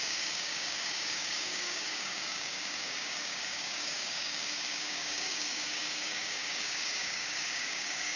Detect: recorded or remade remade